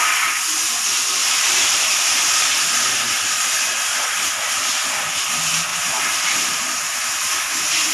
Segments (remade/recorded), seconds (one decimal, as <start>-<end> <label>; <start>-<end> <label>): 0.0-1.2 recorded; 1.2-3.5 remade; 3.5-5.7 recorded; 5.7-7.1 remade; 7.1-7.9 recorded